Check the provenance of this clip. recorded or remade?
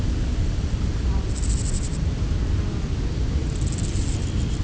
recorded